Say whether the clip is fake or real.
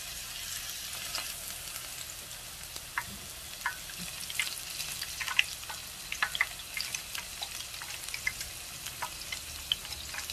real